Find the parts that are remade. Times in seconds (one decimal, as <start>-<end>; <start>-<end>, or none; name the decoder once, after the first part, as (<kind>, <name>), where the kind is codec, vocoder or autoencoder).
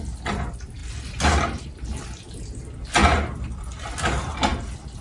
none